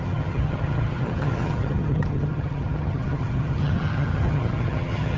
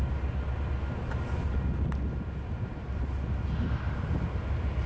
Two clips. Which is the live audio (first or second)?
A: second